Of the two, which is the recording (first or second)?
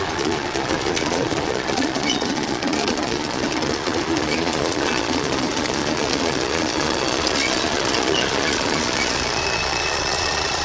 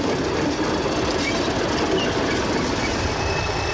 second